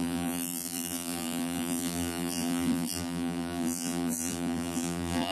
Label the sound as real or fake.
fake